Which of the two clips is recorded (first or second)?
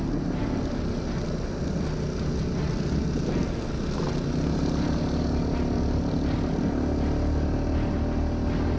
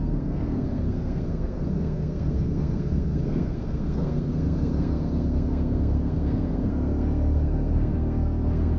first